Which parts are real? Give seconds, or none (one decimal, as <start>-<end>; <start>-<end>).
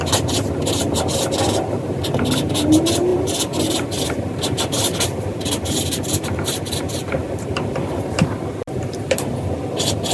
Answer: 0.0-3.1; 7.4-10.1